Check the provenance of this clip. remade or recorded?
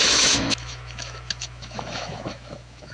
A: remade